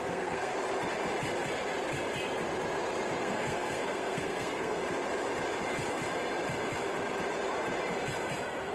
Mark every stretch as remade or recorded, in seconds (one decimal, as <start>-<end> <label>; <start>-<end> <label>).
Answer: 0.0-0.5 remade; 0.5-3.2 recorded; 3.2-4.8 remade; 4.8-8.7 recorded